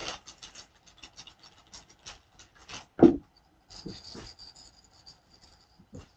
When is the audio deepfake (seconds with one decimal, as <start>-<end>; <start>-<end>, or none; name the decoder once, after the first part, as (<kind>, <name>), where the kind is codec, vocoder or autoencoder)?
none